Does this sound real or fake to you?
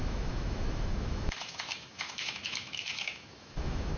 fake